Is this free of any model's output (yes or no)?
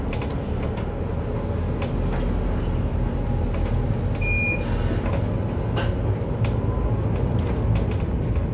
yes